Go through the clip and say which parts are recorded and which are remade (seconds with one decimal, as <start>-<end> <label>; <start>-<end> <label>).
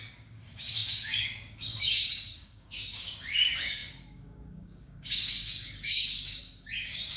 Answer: 0.0-7.2 remade